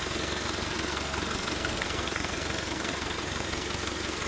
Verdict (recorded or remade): remade